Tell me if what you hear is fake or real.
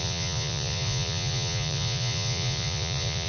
fake